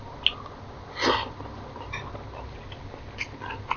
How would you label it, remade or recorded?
recorded